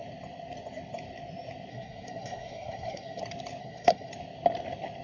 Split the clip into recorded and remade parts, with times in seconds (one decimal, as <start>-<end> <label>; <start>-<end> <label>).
0.0-1.7 recorded; 1.7-3.2 remade; 3.2-3.6 recorded; 3.6-4.1 remade; 4.1-5.0 recorded